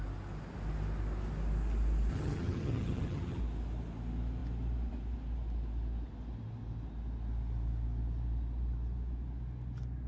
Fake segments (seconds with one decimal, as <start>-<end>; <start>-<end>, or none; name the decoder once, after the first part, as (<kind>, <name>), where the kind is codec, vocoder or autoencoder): 2.1-3.4 (vocoder, HiFi-GAN)